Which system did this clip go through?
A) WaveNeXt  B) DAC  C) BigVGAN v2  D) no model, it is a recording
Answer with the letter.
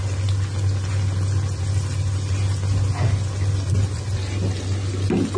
D